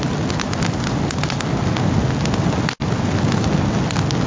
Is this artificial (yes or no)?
no